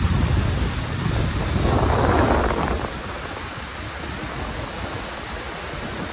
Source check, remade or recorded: recorded